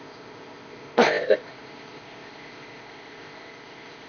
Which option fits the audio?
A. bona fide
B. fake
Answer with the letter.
B